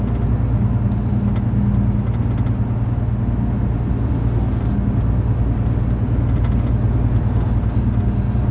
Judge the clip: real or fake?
real